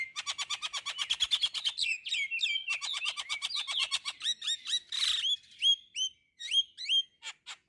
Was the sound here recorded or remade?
recorded